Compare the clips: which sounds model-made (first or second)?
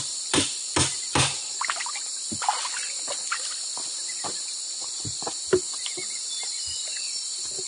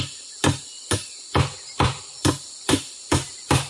second